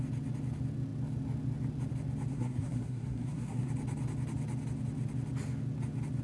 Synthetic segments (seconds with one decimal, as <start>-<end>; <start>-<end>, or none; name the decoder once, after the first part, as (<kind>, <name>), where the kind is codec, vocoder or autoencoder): 2.3-3.7 (codec, SNAC)